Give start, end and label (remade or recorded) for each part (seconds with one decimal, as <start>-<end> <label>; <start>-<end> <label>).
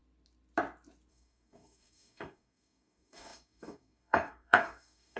0.0-1.1 recorded; 1.1-5.2 remade